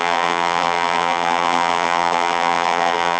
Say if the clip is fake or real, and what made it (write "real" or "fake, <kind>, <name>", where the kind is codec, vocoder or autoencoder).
fake, vocoder, BigVGAN v2